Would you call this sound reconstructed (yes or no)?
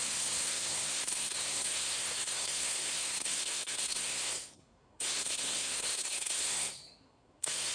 yes